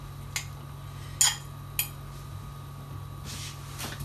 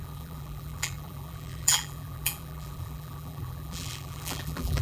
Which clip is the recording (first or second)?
first